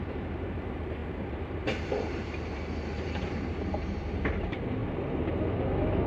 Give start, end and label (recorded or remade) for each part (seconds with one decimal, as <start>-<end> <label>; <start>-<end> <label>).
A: 0.0-4.8 remade; 4.8-6.1 recorded